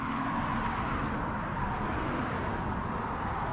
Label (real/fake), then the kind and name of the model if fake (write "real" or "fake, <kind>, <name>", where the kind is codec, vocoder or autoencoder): real